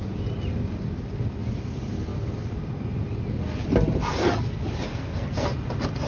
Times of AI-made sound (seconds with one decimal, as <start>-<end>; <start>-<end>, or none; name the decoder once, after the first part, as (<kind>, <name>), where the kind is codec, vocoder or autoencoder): 4.9-5.5 (codec, SNAC)